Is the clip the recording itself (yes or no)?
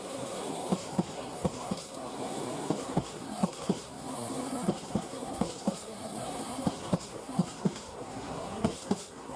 no